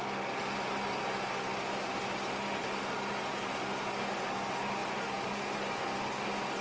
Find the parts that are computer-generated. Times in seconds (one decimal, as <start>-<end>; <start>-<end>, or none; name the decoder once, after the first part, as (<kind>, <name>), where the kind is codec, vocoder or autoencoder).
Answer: 2.6-3.1 (vocoder, BigVGAN v2); 4.8-5.3